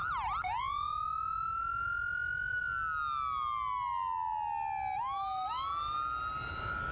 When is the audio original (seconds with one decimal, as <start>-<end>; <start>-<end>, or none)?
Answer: 0.0-6.9